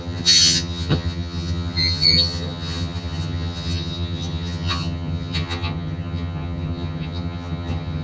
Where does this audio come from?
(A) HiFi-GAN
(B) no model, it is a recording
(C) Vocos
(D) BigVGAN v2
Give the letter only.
A